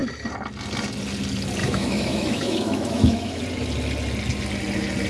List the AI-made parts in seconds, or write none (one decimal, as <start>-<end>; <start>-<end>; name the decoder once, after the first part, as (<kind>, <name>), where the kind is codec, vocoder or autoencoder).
1.6-3.4 (autoencoder, DAC-VAE)

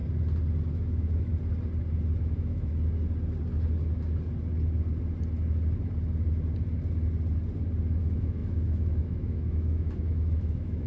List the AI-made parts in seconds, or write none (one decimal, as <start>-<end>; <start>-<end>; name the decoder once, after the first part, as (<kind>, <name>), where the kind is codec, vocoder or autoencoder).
0.7-1.3 (autoencoder, DAC-VAE); 2.2-2.7; 8.0-10.9

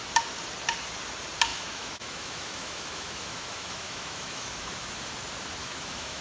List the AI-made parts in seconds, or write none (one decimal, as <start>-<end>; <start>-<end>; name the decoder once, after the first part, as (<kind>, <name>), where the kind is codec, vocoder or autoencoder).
1.5-4.9 (autoencoder, DAC-VAE); 5.6-6.2

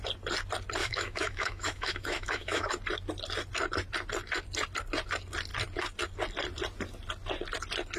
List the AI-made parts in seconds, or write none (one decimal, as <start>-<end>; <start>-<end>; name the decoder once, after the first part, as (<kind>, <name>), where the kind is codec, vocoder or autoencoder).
0.8-2.7 (autoencoder, DAC-VAE)

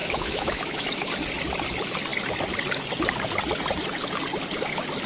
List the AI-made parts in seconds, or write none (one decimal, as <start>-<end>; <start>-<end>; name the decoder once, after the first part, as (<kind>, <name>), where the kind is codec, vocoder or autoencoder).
0.0-1.1 (autoencoder, DAC-VAE)

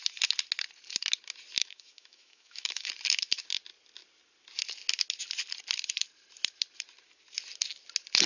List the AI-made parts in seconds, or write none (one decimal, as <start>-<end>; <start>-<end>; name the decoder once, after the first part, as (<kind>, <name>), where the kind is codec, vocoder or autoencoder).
1.6-2.9 (autoencoder, DAC-VAE)

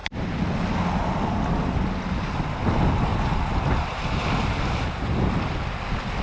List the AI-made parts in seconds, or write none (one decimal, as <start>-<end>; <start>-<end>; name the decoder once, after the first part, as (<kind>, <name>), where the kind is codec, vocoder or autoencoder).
none